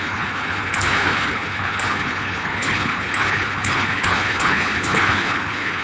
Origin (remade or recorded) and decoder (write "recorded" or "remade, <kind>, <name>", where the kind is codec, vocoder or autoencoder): remade, codec, HILCodec